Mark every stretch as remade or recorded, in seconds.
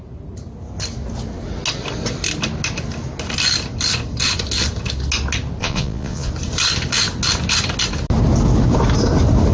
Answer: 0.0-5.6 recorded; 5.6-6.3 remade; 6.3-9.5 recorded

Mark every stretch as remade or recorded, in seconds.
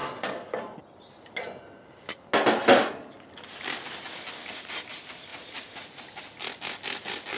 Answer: 0.0-5.3 recorded; 5.3-6.0 remade; 6.0-7.4 recorded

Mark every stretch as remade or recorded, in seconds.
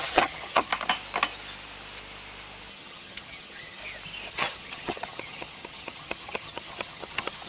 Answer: 0.0-0.7 remade; 0.7-2.7 recorded; 2.7-3.8 remade; 3.8-4.3 recorded; 4.3-7.5 remade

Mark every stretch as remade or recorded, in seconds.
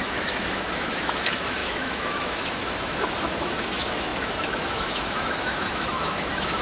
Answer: 0.0-6.6 remade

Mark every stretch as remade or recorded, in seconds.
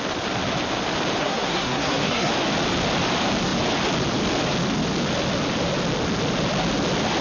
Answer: 0.0-1.2 recorded; 1.2-2.3 remade; 2.3-7.2 recorded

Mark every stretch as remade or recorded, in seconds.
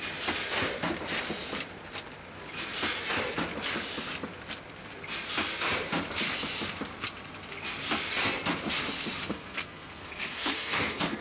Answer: 0.0-9.3 recorded; 9.3-11.2 remade